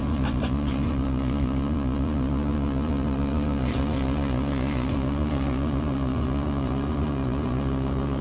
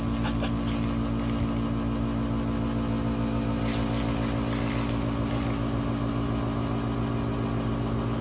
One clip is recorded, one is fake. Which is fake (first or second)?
first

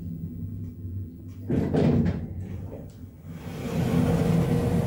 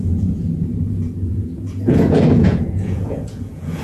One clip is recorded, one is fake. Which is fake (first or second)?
second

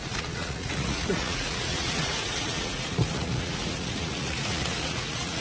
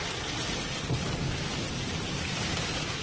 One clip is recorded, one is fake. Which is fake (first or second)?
first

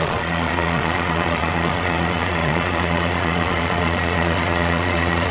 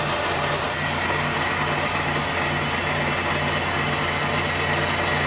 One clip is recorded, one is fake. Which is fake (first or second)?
first